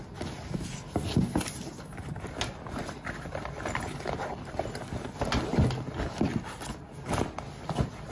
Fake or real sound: real